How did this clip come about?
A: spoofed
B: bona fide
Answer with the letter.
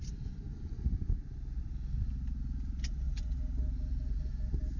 B